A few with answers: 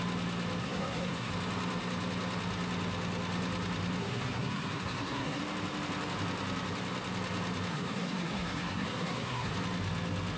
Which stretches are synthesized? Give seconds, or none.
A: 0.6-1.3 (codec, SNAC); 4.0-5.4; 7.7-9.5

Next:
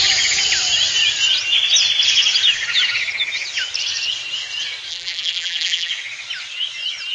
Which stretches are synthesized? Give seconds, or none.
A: 4.9-5.9 (vocoder, BigVGAN v2)

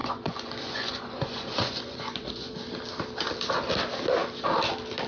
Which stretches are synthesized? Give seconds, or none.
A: 0.0-2.5 (vocoder, Vocos)

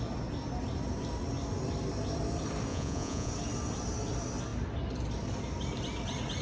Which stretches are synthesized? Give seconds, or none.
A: 2.7-3.3 (vocoder, Vocos)

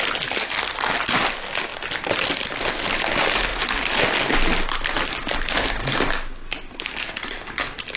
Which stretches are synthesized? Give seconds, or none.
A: none

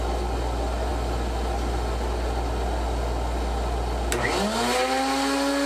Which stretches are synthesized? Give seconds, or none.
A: none

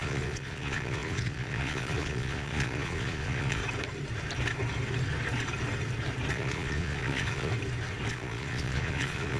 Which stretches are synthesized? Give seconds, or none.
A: 0.0-3.6 (vocoder, Vocos); 6.3-7.5; 8.1-9.4

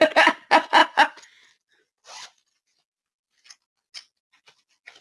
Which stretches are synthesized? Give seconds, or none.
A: none